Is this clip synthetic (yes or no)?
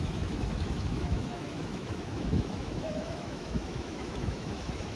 yes